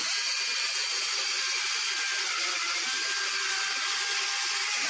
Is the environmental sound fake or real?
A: real